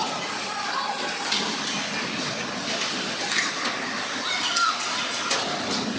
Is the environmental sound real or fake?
real